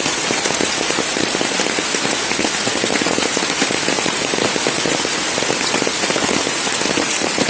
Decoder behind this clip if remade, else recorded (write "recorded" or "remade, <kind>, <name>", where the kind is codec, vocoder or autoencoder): remade, vocoder, Vocos